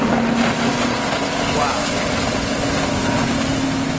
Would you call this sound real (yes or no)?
yes